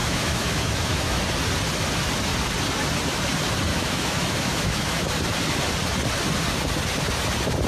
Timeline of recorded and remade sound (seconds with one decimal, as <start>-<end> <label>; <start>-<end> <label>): 0.0-1.2 remade; 1.2-3.7 recorded; 3.7-5.1 remade; 5.1-7.7 recorded